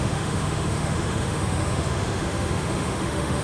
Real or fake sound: fake